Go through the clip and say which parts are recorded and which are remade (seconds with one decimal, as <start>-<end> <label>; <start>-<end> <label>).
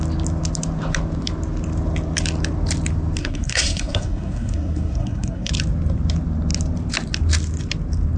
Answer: 0.0-3.2 recorded; 3.2-5.5 remade; 5.5-8.2 recorded